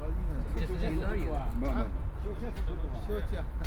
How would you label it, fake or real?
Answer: real